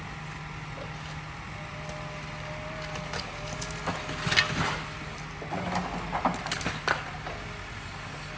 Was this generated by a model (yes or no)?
no